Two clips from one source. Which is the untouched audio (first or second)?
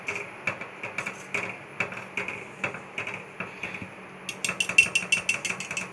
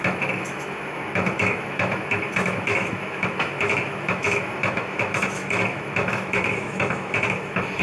first